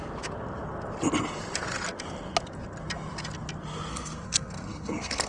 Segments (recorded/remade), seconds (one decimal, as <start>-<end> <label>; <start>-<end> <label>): 0.0-3.9 recorded; 3.9-5.3 remade